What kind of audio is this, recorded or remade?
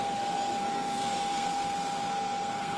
remade